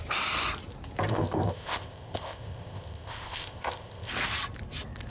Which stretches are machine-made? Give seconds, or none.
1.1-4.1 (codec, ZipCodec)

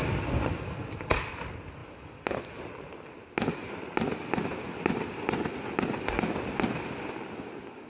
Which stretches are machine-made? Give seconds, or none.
none

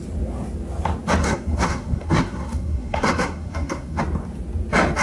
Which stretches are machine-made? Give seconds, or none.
1.2-4.0 (codec, SNAC)

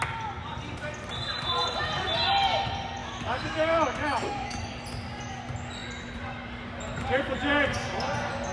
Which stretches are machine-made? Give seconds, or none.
3.0-4.6 (autoencoder, DAC-VAE)

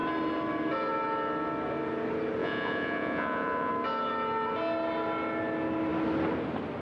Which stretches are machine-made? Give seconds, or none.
2.4-3.7 (vocoder, Vocos)

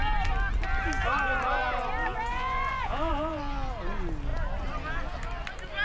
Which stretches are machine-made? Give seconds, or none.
2.3-3.4 (vocoder, Vocos)

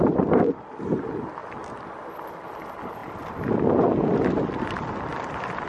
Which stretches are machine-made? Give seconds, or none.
none

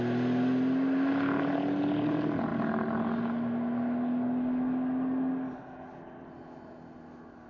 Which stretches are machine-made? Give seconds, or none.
none